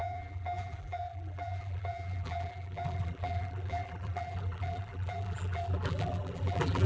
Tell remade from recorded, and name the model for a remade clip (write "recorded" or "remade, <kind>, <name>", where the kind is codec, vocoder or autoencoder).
remade, vocoder, BigVGAN v2